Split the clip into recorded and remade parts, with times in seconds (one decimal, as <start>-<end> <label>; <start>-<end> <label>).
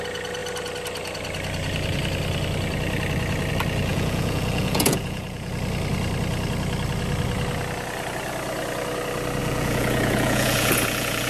0.0-3.9 recorded; 3.9-5.5 remade; 5.5-9.4 recorded; 9.4-11.3 remade